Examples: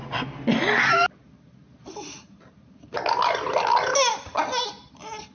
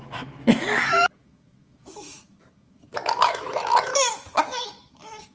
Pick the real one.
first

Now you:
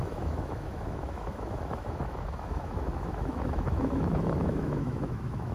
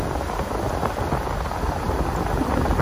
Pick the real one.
second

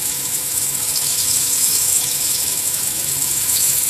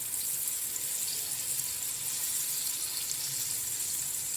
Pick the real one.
second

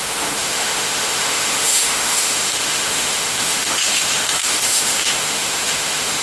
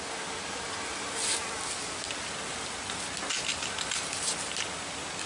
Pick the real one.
second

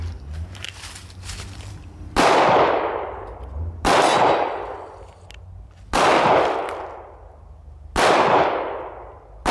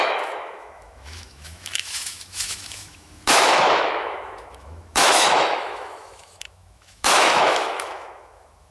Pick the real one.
first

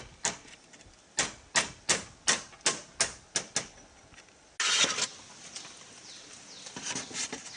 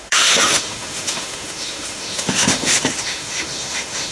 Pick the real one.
first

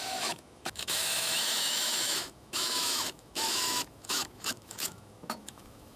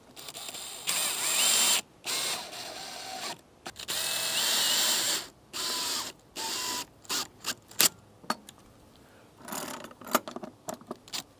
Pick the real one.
second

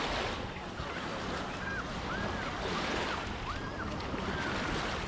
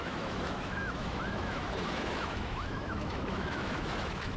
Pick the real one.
first